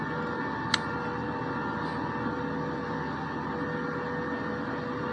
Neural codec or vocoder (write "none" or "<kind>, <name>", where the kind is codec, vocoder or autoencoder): none